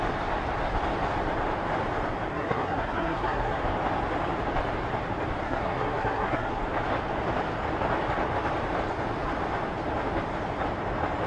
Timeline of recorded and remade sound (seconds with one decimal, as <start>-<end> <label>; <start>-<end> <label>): 0.0-2.3 recorded; 2.3-3.6 remade; 3.6-5.4 recorded; 5.4-6.6 remade; 6.6-11.3 recorded